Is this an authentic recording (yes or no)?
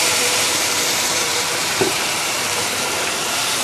no